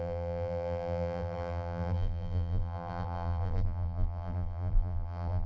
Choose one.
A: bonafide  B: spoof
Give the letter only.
B